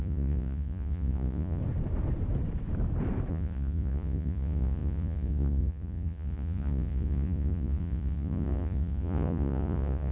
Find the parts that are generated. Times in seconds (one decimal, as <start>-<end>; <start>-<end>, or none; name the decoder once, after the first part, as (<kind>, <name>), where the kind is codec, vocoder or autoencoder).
0.0-1.6 (vocoder, Vocos); 3.3-10.1